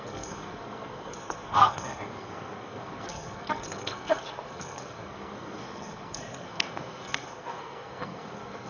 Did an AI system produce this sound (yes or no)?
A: yes